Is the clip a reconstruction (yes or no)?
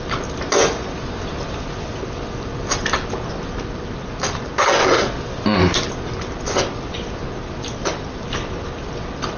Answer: no